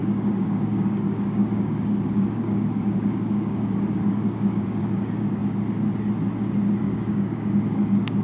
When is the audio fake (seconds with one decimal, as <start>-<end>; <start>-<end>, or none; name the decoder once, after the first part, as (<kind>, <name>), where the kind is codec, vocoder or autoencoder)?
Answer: 0.0-5.4 (codec, DAC); 6.8-8.2

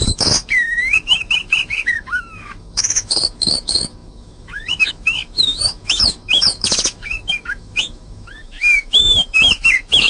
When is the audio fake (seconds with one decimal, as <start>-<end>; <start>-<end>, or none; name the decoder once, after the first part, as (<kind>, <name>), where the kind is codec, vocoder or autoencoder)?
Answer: 0.0-10.1 (autoencoder, DAC-VAE)

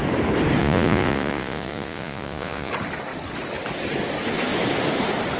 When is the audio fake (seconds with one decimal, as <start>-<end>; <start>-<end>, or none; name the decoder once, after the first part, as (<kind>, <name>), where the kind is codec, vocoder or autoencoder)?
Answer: 0.6-2.7 (vocoder, Vocos)

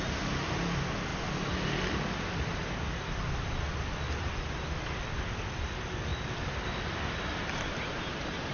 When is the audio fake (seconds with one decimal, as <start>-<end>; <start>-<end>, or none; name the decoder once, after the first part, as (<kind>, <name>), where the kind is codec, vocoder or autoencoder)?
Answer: none

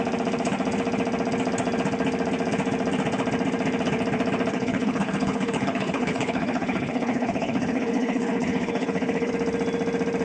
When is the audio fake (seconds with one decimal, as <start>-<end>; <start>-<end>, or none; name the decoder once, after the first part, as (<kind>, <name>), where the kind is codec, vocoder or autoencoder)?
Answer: 4.5-9.3 (codec, HILCodec)

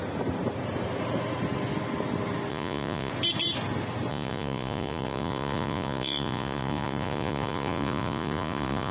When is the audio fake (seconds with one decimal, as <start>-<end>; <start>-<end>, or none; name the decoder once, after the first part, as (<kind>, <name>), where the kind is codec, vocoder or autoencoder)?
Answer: 2.5-3.1 (vocoder, Vocos); 4.1-8.9

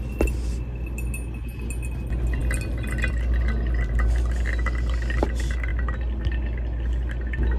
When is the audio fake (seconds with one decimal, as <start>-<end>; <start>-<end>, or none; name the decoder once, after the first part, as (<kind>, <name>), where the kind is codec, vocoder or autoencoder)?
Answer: none

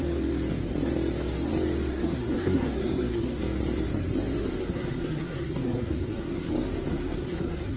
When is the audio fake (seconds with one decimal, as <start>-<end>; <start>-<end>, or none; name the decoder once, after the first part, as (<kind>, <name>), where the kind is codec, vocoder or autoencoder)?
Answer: 1.9-3.4 (codec, SNAC); 4.6-6.5; 6.9-7.8